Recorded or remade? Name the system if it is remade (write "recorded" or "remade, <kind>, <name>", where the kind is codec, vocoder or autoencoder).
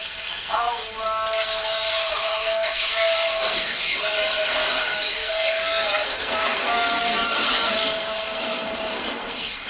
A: remade, codec, SNAC